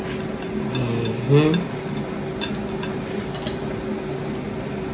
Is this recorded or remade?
recorded